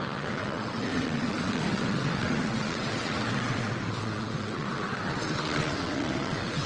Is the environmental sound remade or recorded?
remade